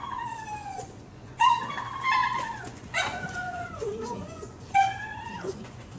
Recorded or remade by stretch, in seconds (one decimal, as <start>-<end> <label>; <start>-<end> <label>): 0.0-0.6 recorded; 0.6-1.5 remade; 1.5-2.2 recorded; 2.2-6.0 remade